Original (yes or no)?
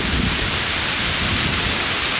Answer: yes